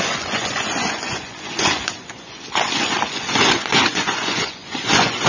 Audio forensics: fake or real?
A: fake